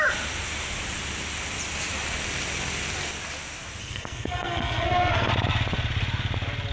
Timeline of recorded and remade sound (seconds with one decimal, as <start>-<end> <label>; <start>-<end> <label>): 0.0-3.8 recorded; 3.8-5.3 remade; 5.3-6.7 recorded